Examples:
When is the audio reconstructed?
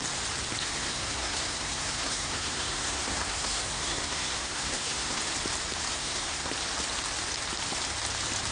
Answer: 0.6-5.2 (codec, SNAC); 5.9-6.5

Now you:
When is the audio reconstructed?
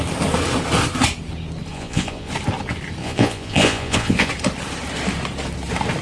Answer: 1.7-2.3 (vocoder, Vocos); 3.0-4.3